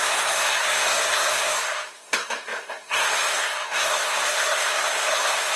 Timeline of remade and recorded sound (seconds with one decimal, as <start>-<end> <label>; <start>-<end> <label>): 0.0-5.6 remade